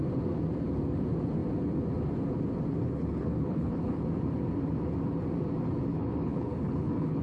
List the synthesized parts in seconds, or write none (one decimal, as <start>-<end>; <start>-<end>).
2.8-4.0; 5.9-7.2